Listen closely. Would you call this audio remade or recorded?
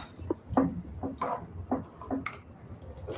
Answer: recorded